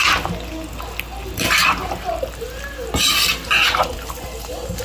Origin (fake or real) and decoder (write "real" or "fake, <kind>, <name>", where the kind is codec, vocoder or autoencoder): real